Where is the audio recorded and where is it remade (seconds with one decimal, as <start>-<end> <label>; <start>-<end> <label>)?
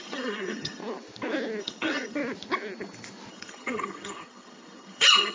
0.0-0.8 remade; 0.8-1.6 recorded; 1.6-2.2 remade; 2.2-3.3 recorded; 3.3-5.3 remade